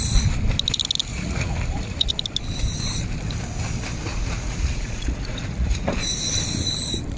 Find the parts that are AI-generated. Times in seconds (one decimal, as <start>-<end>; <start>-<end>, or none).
1.1-2.1; 4.1-5.9